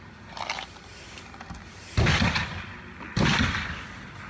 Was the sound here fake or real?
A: real